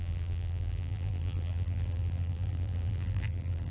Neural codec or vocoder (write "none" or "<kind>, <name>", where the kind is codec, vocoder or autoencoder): vocoder, BigVGAN v2